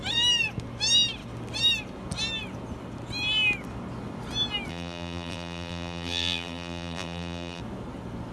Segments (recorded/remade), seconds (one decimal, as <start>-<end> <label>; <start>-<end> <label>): 0.0-4.7 recorded; 4.7-7.6 remade; 7.6-8.3 recorded